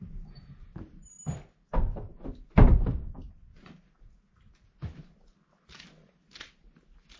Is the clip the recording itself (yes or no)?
yes